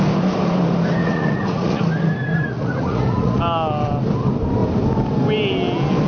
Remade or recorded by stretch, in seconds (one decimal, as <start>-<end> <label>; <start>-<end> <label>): 0.0-1.0 recorded; 1.0-1.8 remade; 1.8-2.3 recorded; 2.3-3.4 remade; 3.4-6.1 recorded